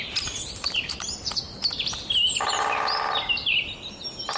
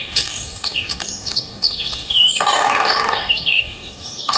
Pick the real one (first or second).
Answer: first